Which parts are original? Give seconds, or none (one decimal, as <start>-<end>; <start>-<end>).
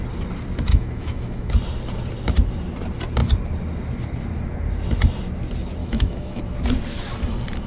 0.0-0.7; 1.5-5.8; 6.4-7.7